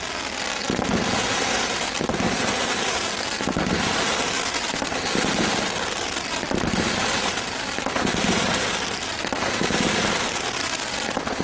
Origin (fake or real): real